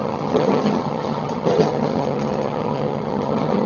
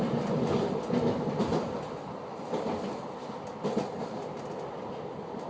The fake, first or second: first